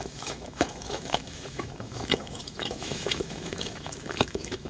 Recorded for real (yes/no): no